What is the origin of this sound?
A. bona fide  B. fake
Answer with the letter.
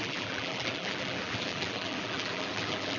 B